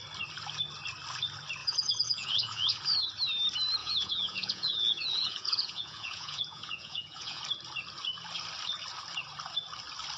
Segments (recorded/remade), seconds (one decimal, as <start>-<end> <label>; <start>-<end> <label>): 0.0-1.6 recorded; 1.6-2.8 remade; 2.8-3.8 recorded; 3.8-7.4 remade; 7.4-10.2 recorded